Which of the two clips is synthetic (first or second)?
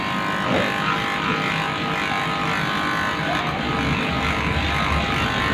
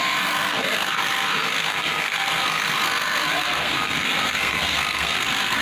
second